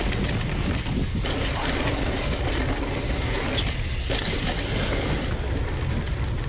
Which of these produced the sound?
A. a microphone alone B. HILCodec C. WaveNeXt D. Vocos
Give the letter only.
A